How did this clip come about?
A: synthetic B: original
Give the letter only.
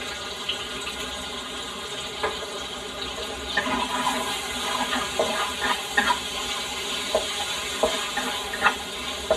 B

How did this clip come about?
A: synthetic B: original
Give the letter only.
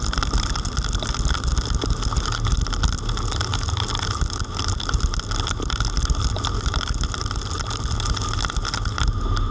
B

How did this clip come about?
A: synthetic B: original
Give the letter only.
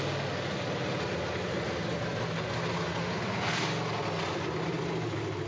B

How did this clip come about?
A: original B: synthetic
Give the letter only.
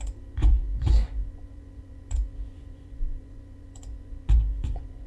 B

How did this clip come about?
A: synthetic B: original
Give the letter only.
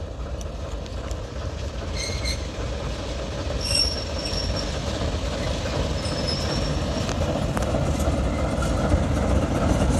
B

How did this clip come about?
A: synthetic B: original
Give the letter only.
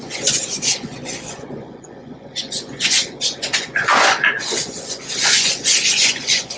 A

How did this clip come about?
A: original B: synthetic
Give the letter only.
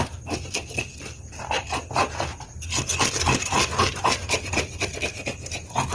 A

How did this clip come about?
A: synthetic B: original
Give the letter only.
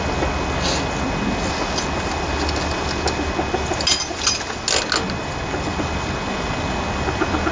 B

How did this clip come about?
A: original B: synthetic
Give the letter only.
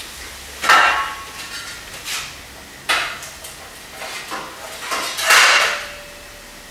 A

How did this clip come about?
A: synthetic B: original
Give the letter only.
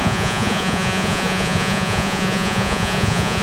A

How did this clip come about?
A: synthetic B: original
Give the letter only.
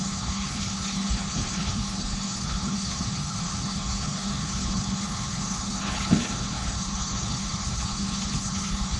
A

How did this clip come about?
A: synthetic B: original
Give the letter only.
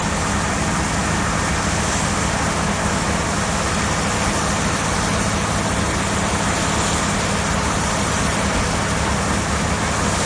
B